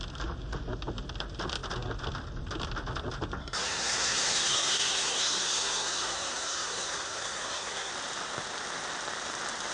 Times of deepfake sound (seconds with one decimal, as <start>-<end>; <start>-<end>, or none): 3.4-7.9